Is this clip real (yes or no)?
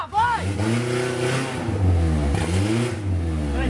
yes